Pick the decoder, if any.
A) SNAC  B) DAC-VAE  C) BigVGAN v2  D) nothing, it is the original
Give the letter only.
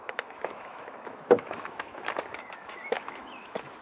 B